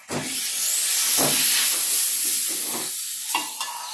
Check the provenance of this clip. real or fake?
real